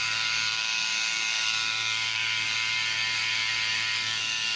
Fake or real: fake